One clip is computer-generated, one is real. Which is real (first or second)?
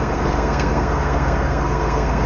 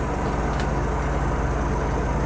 second